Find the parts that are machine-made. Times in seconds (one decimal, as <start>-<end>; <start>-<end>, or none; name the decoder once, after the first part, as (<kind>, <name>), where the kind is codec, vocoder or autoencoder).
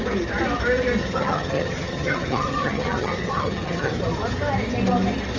1.0-4.0 (vocoder, HiFi-GAN)